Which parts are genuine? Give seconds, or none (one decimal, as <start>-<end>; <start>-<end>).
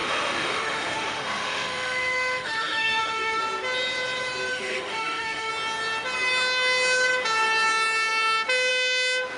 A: 3.4-4.5; 5.5-9.4